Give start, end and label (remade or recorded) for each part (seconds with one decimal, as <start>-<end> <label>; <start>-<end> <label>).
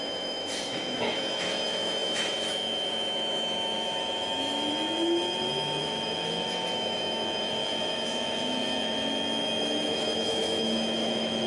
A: 0.0-11.5 remade